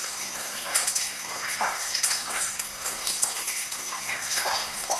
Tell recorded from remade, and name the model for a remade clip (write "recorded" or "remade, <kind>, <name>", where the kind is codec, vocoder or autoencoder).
remade, codec, SNAC